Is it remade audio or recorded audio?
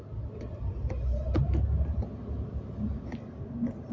recorded